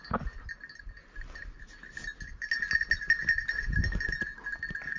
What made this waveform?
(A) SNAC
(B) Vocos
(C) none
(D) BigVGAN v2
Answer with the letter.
C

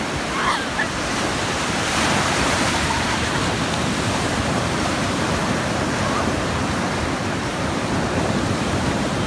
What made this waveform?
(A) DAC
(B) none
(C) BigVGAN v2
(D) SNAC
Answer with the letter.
C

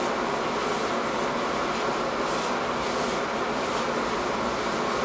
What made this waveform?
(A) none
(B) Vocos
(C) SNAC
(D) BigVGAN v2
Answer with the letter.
D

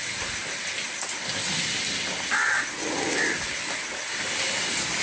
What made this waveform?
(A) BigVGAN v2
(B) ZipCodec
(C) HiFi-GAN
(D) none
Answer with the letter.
D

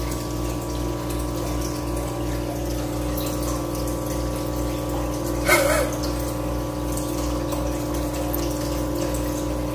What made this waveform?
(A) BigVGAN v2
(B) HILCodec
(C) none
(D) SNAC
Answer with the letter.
C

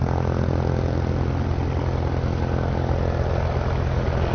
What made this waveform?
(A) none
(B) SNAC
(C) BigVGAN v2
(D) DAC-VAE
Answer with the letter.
A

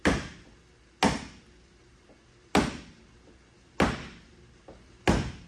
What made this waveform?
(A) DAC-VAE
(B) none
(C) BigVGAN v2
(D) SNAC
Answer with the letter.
B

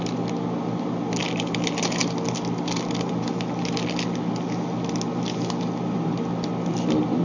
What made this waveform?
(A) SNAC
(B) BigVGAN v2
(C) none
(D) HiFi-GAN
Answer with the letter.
C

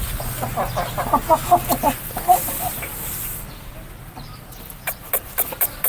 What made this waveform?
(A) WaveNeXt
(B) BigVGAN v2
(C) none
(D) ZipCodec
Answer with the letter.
C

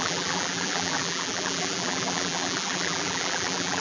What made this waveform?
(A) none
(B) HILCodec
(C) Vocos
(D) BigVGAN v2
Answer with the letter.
D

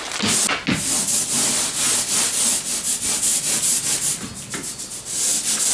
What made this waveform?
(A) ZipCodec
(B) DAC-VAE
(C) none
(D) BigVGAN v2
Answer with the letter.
C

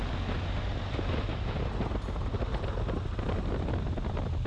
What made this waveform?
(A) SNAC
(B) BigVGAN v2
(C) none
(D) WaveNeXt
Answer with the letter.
C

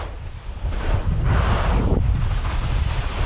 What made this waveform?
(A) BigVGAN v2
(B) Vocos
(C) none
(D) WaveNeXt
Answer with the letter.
C